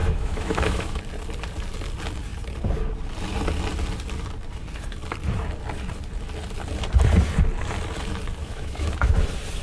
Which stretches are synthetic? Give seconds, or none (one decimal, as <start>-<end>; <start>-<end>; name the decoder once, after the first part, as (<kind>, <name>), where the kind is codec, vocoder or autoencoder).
0.0-1.0 (autoencoder, DAC-VAE); 8.4-9.1